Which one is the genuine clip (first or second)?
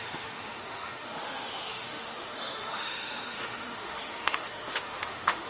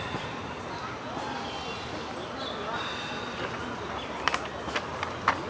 second